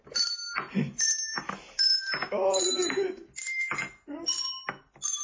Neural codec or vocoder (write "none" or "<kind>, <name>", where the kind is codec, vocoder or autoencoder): none